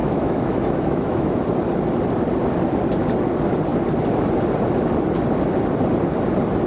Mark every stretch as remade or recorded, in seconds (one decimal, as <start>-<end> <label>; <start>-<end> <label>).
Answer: 0.0-1.4 remade; 1.4-6.7 recorded